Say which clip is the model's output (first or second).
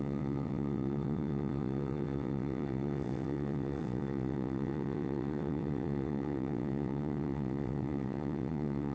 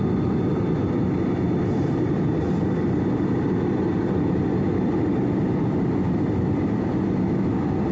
first